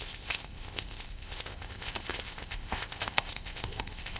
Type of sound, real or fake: fake